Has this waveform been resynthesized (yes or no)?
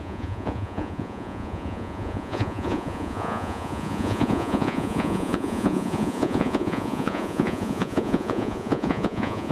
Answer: yes